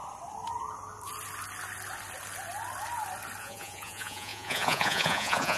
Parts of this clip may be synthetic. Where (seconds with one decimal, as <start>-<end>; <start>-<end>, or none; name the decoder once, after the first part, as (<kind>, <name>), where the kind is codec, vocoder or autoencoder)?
3.4-5.6 (vocoder, Vocos)